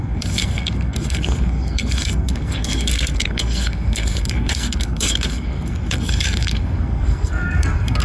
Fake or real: fake